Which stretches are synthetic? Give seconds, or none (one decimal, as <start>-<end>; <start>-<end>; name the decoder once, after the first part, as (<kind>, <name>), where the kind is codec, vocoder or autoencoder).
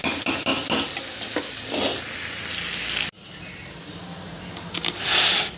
none